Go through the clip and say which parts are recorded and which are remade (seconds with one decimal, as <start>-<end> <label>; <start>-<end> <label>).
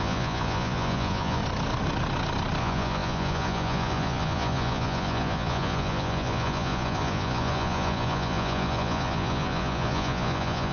0.0-1.4 remade; 1.4-2.6 recorded; 2.6-10.7 remade